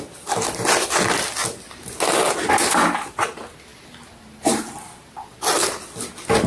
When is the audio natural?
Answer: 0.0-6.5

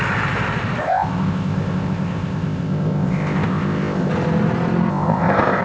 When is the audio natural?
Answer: 0.0-0.8; 4.1-4.9

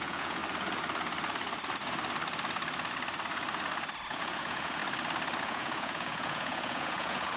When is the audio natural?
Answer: 0.4-4.1; 4.8-5.4

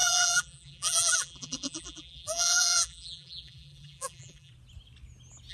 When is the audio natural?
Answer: 4.5-5.5